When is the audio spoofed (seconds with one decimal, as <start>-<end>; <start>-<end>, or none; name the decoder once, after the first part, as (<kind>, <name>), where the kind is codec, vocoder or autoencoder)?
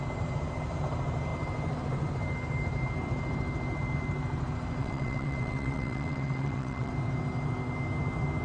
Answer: 4.8-6.9 (vocoder, WaveNeXt)